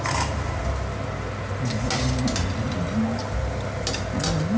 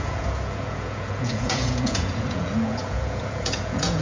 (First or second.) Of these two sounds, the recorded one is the first